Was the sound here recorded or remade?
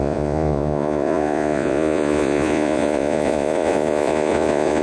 remade